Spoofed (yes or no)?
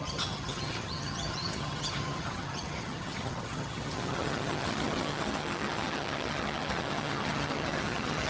yes